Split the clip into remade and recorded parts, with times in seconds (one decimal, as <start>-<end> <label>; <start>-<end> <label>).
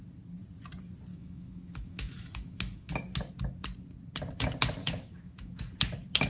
0.0-1.1 recorded; 1.1-2.9 remade; 2.9-4.8 recorded; 4.8-5.6 remade; 5.6-6.3 recorded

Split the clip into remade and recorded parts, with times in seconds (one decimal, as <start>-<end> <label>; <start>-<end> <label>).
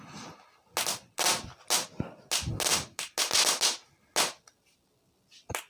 0.0-5.7 recorded